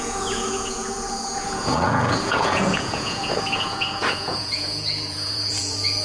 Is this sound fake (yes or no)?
yes